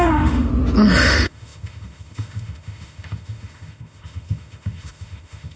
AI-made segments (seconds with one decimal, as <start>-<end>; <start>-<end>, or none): 0.0-0.5; 1.1-5.6